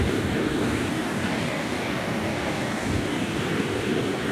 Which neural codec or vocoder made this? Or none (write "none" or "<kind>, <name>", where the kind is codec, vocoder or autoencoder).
codec, DAC